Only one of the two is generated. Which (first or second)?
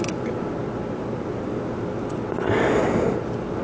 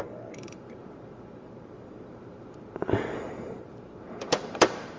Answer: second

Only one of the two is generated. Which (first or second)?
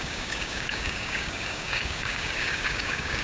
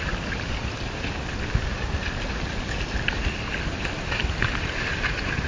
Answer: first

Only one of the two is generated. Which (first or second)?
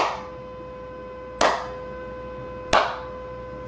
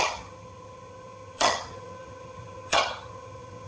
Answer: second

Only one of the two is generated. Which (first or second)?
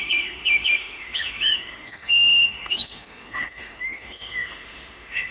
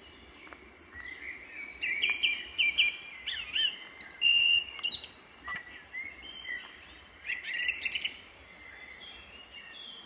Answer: first